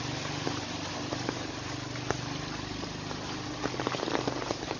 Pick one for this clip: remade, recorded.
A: recorded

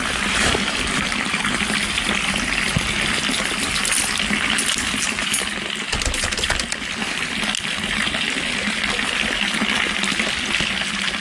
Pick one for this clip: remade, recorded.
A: recorded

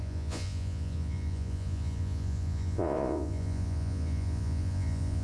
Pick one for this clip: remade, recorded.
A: remade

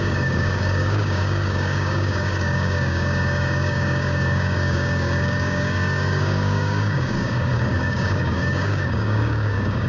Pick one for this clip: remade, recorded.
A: remade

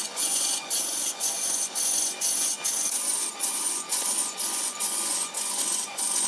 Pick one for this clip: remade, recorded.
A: remade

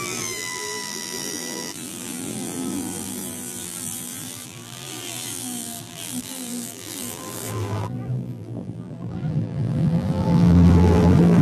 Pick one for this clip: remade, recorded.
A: remade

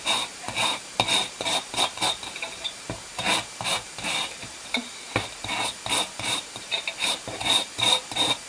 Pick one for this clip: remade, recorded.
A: remade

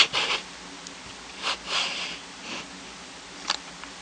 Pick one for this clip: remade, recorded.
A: recorded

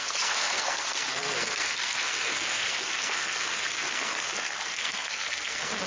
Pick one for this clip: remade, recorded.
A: remade